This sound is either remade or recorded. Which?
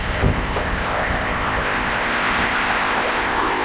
remade